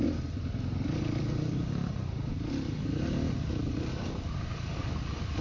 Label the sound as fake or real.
real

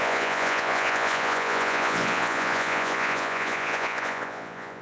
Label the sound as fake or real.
fake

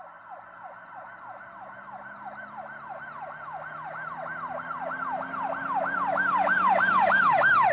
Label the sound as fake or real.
real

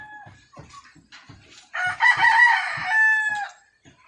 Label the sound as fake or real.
real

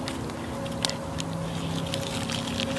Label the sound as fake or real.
real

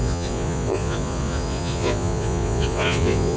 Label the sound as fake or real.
fake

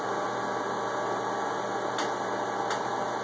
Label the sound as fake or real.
real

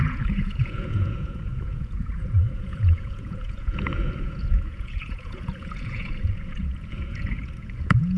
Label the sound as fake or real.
fake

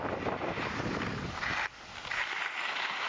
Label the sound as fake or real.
real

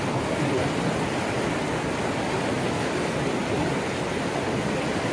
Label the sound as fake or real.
real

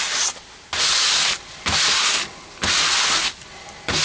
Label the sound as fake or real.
real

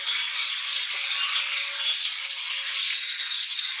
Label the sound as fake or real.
real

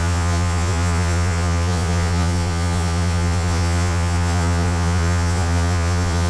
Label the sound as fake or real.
fake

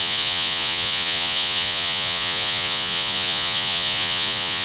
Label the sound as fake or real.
fake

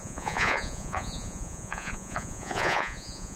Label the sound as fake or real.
fake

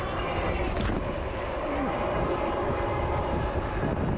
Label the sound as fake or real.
real